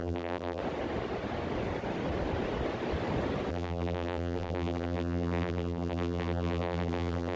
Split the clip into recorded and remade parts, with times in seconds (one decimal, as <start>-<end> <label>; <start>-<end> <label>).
0.0-0.6 remade; 0.6-3.5 recorded; 3.5-7.4 remade